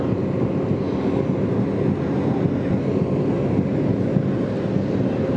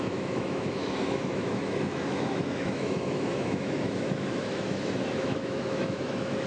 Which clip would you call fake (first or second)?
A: second